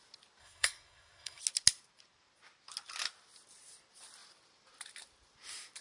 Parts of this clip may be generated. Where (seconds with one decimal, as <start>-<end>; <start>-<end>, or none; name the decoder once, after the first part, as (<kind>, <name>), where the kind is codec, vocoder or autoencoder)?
0.4-1.4 (codec, SNAC)